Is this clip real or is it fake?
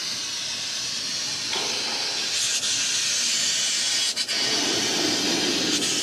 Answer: real